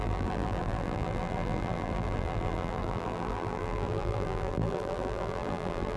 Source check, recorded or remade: remade